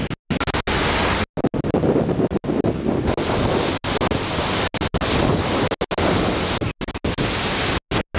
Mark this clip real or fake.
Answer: real